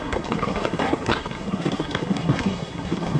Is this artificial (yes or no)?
yes